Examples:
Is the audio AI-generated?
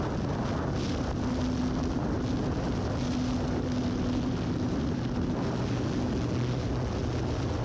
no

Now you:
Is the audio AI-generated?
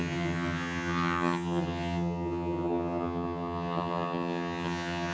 yes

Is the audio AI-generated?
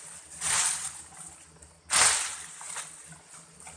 no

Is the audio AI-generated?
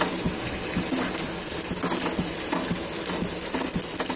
no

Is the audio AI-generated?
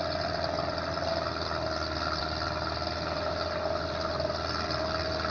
no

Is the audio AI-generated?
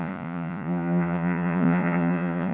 yes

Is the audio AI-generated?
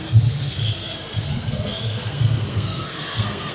yes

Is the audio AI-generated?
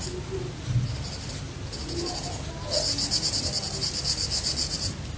no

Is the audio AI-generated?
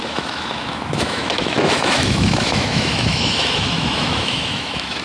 yes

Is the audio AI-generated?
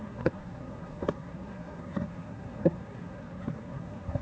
yes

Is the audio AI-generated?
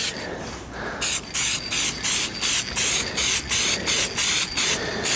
no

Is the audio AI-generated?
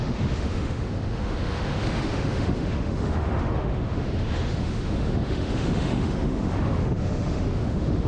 yes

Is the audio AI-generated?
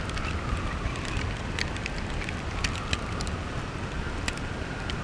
no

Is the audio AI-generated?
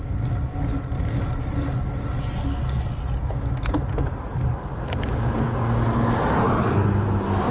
no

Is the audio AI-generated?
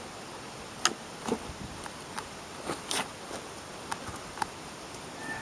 no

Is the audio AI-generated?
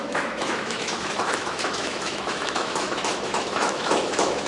yes